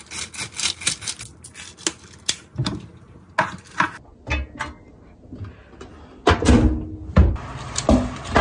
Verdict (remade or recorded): recorded